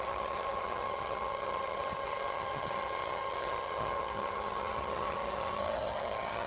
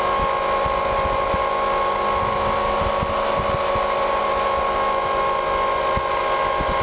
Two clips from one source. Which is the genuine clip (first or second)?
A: second